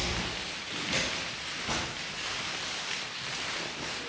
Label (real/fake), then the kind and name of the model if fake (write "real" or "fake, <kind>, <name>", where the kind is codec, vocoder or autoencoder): fake, vocoder, BigVGAN v2